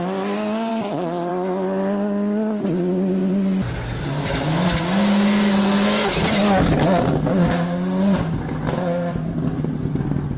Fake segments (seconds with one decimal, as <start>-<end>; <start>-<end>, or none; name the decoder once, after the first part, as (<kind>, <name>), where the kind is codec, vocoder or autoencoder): 0.7-1.3 (vocoder, Vocos)